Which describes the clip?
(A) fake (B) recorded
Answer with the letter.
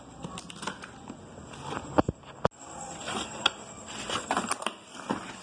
B